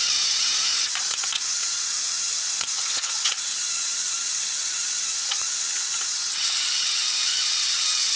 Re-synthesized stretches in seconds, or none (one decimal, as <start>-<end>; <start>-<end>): 0.0-8.2